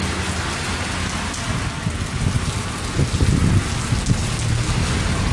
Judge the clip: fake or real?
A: real